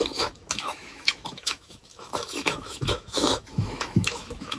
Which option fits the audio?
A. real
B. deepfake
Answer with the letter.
B